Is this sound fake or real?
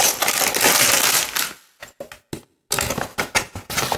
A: real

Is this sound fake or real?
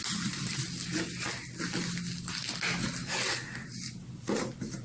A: real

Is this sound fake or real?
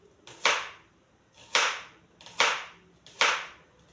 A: real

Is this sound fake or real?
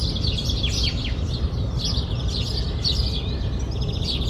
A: real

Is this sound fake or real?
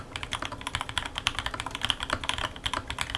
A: real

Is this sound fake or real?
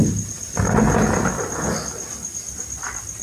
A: real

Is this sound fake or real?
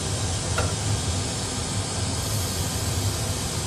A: real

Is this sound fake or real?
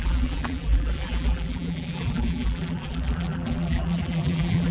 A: fake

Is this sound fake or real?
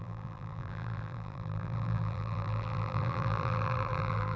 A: fake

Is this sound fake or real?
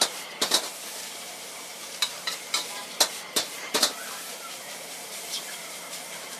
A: fake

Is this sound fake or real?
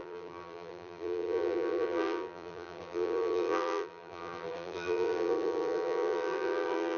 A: fake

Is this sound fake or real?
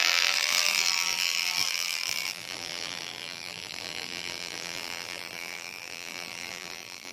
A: fake